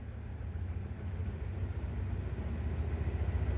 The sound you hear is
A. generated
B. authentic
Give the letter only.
B